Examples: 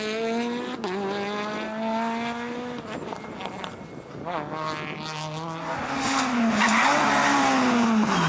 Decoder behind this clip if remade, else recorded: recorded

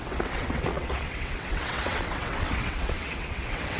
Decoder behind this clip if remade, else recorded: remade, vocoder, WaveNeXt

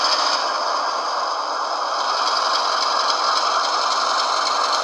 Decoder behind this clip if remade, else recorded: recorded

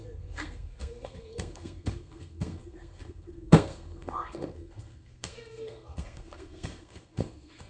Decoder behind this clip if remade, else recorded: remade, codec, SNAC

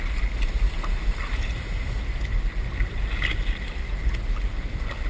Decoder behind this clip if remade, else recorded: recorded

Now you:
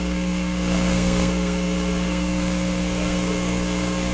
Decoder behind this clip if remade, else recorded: remade, codec, SNAC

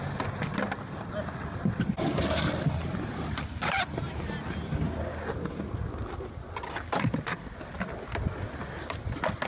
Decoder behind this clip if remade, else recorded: recorded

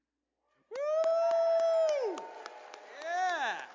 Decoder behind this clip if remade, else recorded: recorded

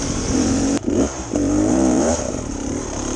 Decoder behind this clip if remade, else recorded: remade, vocoder, BigVGAN v2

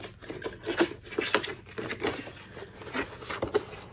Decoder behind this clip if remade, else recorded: recorded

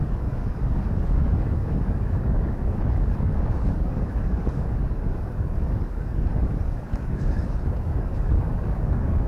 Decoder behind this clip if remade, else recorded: remade, codec, DAC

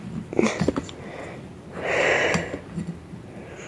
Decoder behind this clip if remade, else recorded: recorded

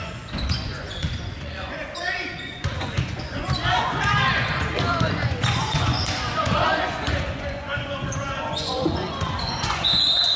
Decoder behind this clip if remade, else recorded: remade, vocoder, Vocos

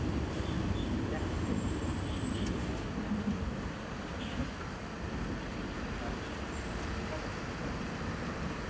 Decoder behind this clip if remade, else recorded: recorded